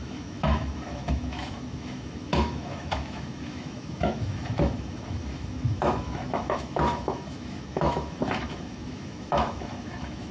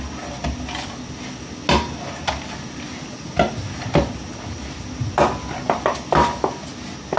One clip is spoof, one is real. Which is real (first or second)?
second